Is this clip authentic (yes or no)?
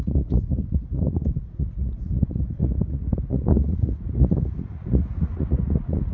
no